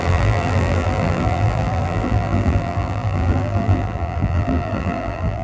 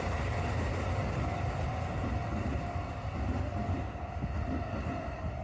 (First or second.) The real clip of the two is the second